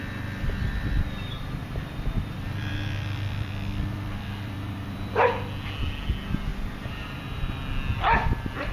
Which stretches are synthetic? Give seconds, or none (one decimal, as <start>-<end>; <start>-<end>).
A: 1.6-5.1; 6.5-7.6